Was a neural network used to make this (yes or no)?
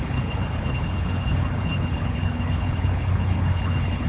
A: yes